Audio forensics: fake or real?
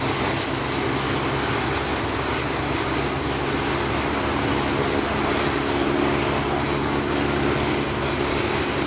real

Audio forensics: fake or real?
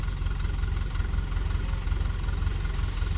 real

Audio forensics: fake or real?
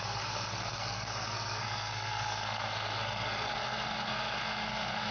fake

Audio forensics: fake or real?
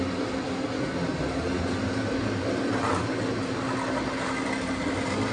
real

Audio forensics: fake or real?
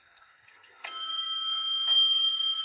fake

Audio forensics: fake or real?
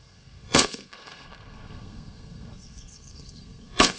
fake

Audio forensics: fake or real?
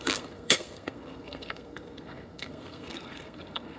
fake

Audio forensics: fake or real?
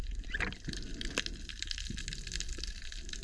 real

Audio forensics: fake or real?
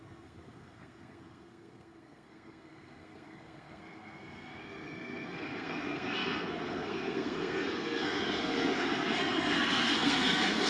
fake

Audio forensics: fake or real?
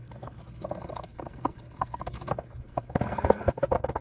fake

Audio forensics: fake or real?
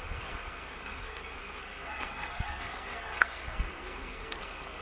fake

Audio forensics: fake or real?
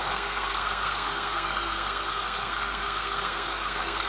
fake